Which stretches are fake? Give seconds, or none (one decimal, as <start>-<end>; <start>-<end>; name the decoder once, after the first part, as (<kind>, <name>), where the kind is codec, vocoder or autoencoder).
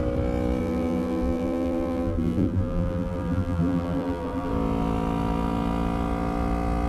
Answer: 0.6-4.5 (vocoder, BigVGAN v2)